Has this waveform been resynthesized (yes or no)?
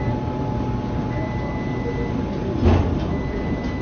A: no